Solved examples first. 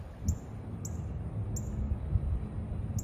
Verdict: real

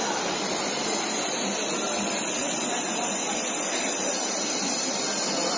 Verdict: real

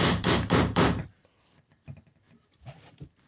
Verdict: fake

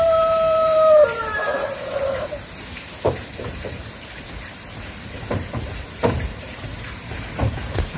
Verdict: fake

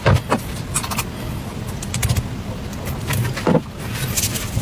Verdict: real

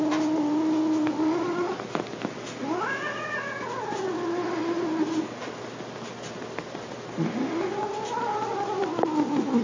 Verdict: real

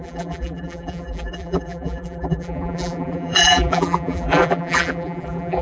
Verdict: fake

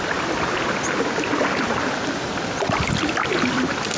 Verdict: real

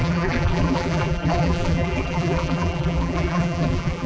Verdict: fake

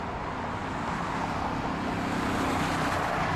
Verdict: real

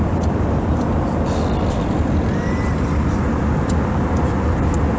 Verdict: fake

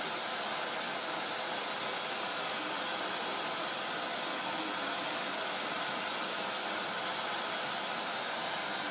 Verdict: real